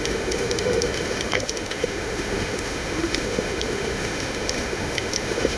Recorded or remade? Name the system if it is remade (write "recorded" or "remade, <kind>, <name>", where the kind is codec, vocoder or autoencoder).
remade, autoencoder, DAC-VAE